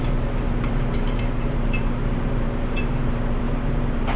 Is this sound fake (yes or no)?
yes